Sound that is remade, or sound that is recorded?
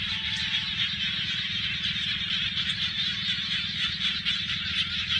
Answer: recorded